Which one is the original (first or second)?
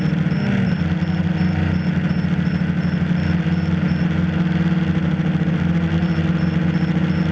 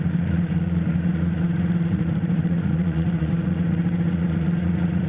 first